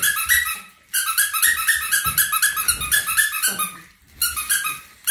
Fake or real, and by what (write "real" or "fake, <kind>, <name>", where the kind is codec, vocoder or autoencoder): real